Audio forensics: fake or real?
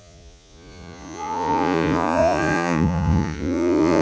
fake